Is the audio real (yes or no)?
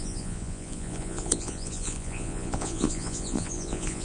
no